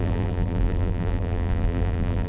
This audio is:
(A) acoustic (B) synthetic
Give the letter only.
B